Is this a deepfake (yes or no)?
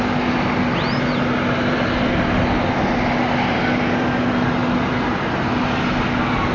no